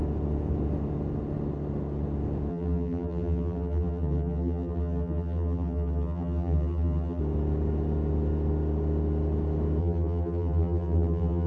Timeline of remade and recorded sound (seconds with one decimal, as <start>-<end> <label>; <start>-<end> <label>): 0.0-2.5 recorded; 2.5-7.2 remade; 7.2-9.8 recorded; 9.8-11.5 remade